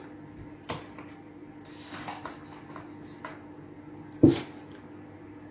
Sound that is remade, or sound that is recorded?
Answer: recorded